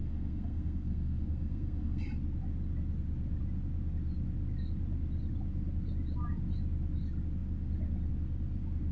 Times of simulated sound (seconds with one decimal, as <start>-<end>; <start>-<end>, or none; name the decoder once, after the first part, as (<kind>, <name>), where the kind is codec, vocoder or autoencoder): 0.0-2.0 (codec, SNAC)